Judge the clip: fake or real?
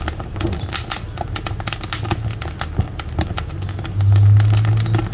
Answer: real